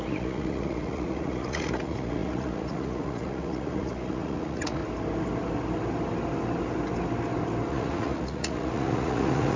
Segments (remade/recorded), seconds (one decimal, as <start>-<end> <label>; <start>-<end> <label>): 0.0-4.8 remade; 4.8-7.7 recorded; 7.7-9.6 remade